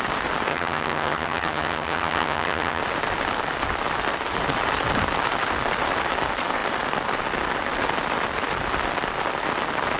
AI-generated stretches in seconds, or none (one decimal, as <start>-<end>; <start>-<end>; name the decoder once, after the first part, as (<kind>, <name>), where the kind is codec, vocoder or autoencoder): 0.5-2.8 (vocoder, HiFi-GAN)